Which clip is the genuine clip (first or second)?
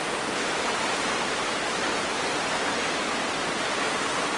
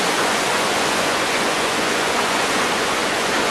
first